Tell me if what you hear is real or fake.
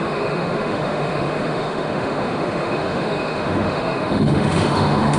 fake